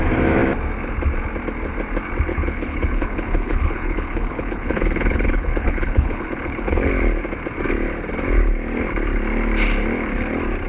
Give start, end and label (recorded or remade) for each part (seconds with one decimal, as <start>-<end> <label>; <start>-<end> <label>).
0.0-2.3 recorded; 2.3-6.9 remade; 6.9-10.7 recorded